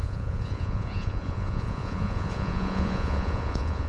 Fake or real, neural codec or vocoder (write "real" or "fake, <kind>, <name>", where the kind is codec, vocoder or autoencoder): fake, vocoder, Vocos